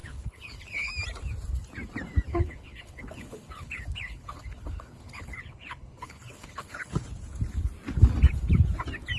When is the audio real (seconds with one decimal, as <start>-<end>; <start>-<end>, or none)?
0.9-2.3; 7.0-9.2